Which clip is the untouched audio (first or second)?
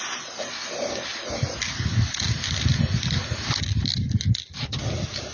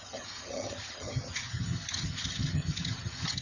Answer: first